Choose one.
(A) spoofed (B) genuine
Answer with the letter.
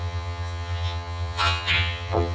A